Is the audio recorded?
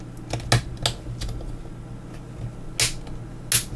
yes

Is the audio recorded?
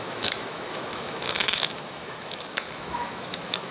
no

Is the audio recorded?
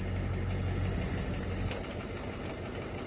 yes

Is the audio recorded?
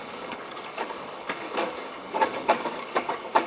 no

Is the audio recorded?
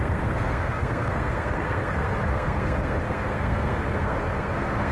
no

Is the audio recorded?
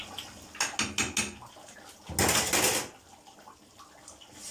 yes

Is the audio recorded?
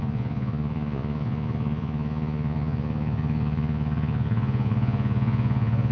no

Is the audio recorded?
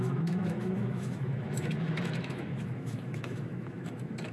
no